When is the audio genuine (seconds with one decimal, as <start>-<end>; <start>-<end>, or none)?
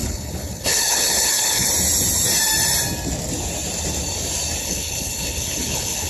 1.7-4.6